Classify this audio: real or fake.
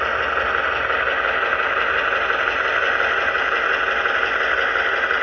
real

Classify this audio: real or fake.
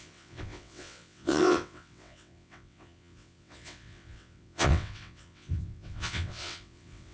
fake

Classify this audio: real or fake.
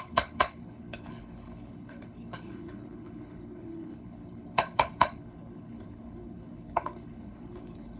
fake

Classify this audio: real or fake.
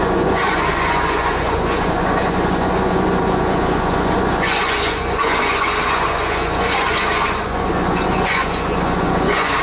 fake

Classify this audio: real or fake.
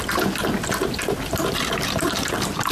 real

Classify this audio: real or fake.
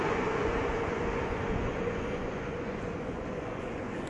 fake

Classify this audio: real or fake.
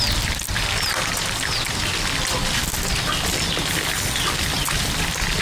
real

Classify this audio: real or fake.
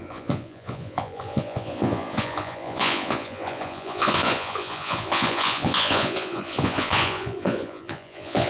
fake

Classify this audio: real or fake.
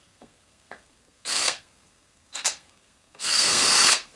fake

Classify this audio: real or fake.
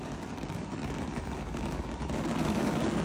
fake